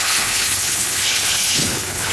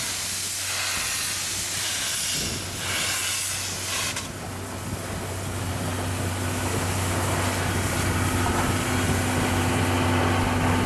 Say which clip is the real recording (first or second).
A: second